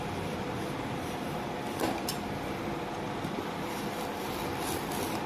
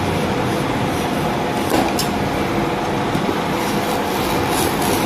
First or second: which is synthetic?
first